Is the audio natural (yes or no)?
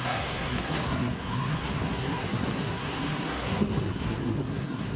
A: no